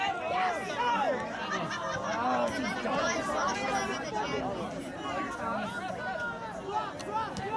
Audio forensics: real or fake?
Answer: real